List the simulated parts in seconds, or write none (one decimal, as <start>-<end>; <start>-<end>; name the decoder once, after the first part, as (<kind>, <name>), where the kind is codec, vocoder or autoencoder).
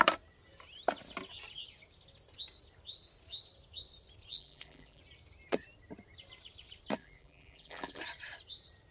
4.3-5.0 (vocoder, BigVGAN v2); 7.0-8.0